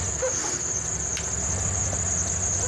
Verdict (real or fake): real